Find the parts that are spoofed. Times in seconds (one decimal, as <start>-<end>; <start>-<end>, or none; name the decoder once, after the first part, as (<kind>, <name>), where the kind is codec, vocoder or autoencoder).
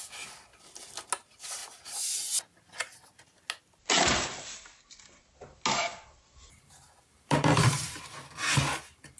5.9-8.0 (vocoder, BigVGAN v2)